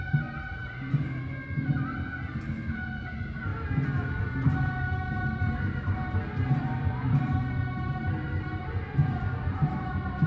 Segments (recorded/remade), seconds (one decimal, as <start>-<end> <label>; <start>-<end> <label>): 0.0-10.3 remade